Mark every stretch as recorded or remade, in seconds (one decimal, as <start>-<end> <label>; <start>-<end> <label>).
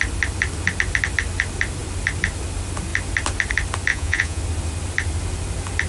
0.0-3.9 recorded; 3.9-4.4 remade; 4.4-5.9 recorded